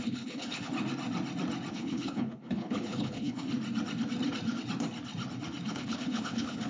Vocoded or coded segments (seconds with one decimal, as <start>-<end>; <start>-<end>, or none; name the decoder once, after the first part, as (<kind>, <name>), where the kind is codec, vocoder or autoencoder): 0.0-0.7 (codec, HILCodec); 1.7-3.5; 5.7-6.7